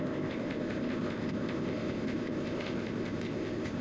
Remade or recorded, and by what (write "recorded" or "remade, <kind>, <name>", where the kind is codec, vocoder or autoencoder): remade, codec, ZipCodec